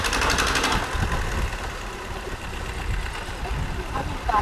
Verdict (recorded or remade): recorded